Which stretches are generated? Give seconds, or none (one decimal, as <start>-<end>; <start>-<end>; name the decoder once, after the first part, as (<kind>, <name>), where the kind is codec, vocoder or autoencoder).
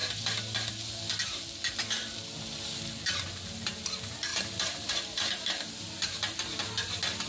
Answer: 4.3-5.7 (vocoder, BigVGAN v2)